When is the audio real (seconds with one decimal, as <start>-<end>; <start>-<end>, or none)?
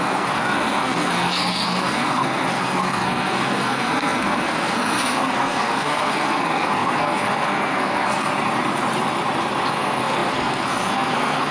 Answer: 8.3-9.7